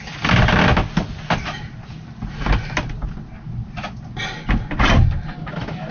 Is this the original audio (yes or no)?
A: yes